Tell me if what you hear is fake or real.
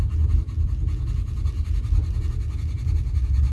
real